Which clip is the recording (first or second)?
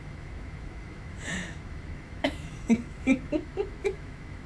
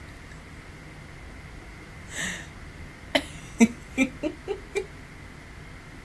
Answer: second